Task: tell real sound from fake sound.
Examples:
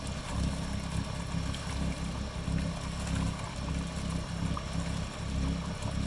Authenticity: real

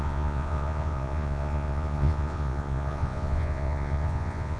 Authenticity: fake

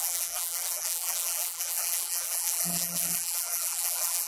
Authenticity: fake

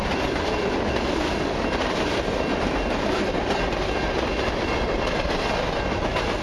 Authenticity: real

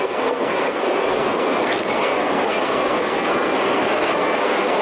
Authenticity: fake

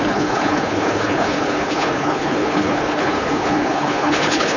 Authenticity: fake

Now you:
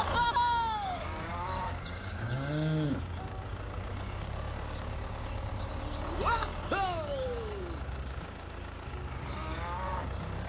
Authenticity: fake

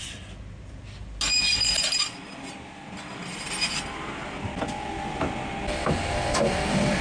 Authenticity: real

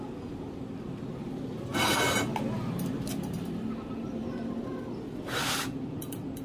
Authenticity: fake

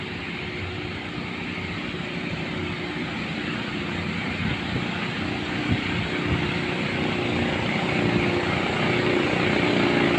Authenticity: real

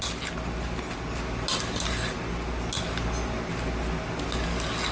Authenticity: real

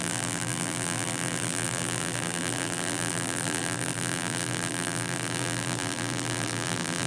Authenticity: fake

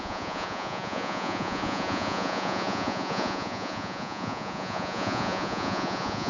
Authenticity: fake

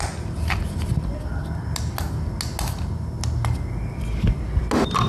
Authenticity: real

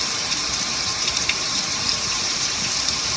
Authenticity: fake